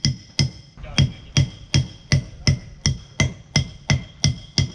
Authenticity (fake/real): real